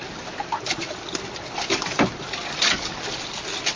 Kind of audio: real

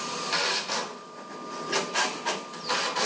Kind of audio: real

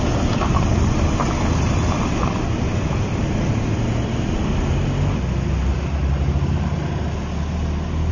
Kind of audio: real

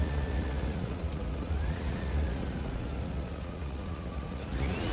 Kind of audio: fake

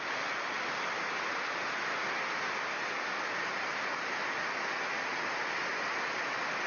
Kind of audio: real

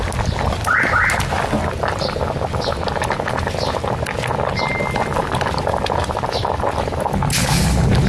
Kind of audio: real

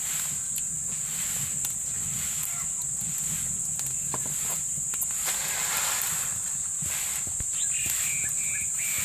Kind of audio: real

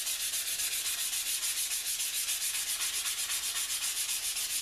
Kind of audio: real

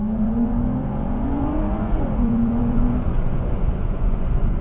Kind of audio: fake